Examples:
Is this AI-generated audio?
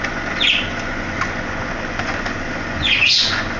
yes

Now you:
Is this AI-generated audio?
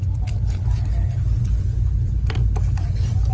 no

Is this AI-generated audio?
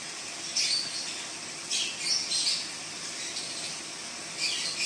no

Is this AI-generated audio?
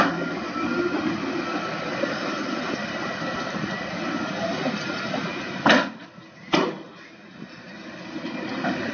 yes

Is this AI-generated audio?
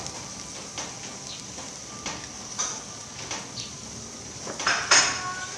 no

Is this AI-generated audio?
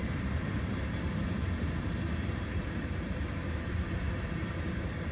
yes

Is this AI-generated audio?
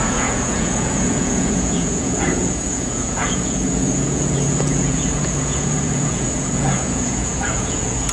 yes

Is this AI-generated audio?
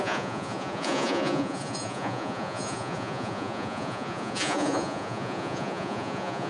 yes